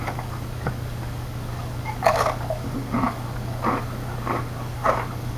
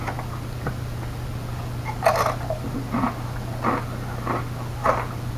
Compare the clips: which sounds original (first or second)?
second